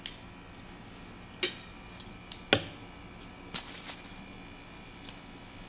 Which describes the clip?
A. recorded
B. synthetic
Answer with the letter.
A